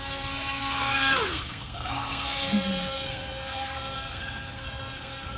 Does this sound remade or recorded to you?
remade